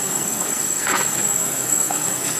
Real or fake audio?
fake